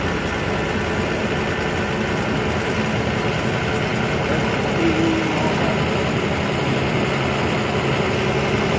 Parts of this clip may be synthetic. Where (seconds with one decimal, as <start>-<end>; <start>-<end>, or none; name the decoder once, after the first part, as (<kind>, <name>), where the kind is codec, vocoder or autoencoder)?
none